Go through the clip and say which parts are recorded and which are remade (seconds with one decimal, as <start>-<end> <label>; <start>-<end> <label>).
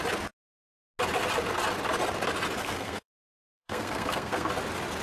0.0-2.6 recorded; 2.6-4.5 remade; 4.5-5.0 recorded